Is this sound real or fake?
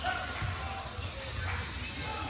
real